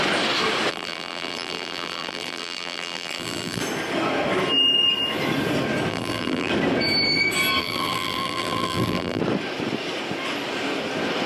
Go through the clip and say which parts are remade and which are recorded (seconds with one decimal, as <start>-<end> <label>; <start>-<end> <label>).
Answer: 0.0-0.7 recorded; 0.7-3.6 remade; 3.6-5.9 recorded; 5.9-6.5 remade; 6.5-7.6 recorded; 7.6-9.2 remade; 9.2-11.3 recorded